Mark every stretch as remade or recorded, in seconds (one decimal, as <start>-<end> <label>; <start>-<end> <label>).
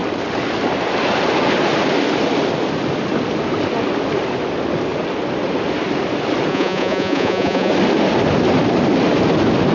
0.0-6.5 recorded; 6.5-7.7 remade; 7.7-9.7 recorded